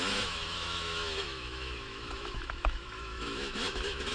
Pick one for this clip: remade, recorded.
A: remade